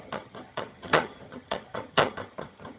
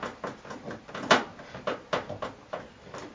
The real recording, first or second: second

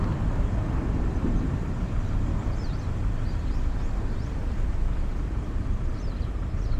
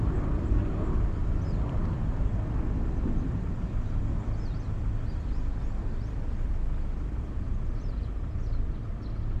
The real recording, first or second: second